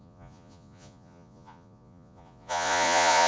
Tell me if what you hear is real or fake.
fake